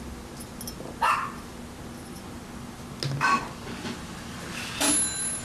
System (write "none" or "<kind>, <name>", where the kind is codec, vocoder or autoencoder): none